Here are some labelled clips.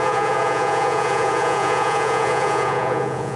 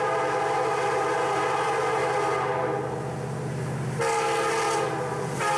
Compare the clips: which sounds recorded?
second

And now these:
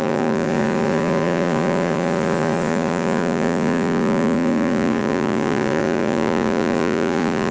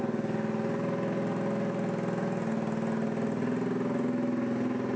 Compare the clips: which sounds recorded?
second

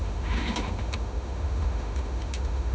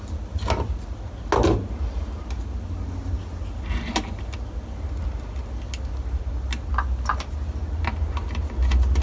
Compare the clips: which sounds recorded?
second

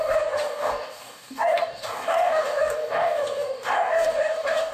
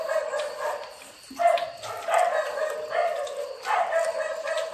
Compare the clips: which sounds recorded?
second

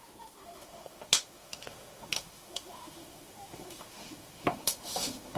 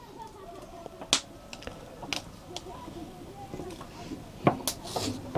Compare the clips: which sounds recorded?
second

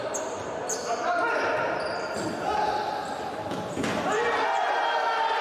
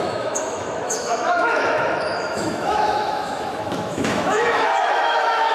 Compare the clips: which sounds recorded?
first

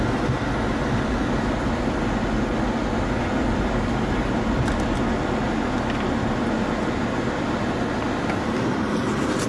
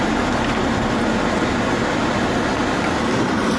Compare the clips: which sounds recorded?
first